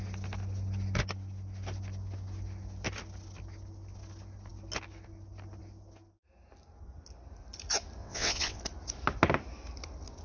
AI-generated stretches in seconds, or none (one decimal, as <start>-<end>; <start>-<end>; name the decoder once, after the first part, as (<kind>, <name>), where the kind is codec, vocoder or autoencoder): 8.0-8.6 (vocoder, WaveNeXt)